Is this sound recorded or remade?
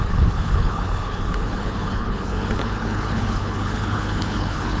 remade